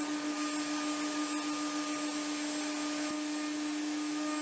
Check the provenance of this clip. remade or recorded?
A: recorded